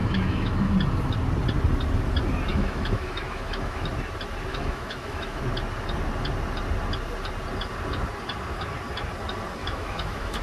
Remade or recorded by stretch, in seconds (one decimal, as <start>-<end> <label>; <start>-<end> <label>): 0.0-0.7 remade; 0.7-2.5 recorded; 2.5-3.9 remade; 3.9-4.5 recorded; 4.5-5.4 remade; 5.4-9.6 recorded; 9.6-10.4 remade